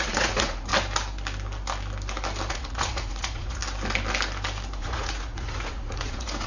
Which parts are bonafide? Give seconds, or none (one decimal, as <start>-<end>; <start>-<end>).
0.7-2.5; 3.6-4.8